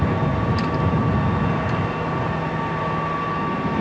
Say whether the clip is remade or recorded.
recorded